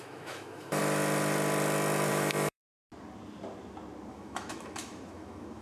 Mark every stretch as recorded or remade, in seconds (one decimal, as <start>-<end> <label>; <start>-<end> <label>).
0.0-0.8 remade; 0.8-2.1 recorded; 2.1-2.7 remade; 2.7-4.1 recorded; 4.1-5.6 remade